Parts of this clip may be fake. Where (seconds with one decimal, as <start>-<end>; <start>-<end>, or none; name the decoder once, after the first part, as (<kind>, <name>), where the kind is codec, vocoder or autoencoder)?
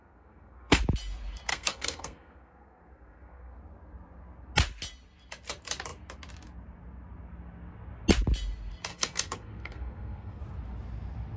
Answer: 0.0-0.8 (codec, SNAC); 1.5-3.5; 8.9-10.4